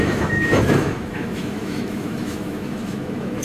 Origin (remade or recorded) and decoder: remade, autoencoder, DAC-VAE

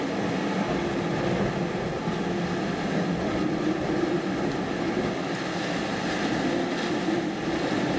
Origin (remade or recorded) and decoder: recorded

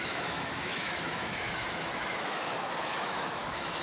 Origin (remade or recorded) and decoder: remade, autoencoder, DAC-VAE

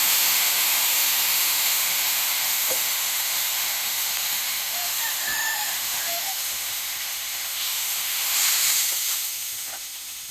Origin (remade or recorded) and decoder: remade, autoencoder, DAC-VAE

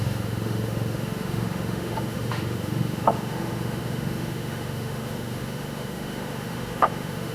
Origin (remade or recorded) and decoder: remade, autoencoder, DAC-VAE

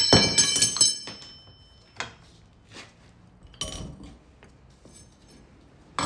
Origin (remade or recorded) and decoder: recorded